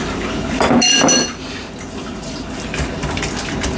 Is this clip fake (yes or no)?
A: no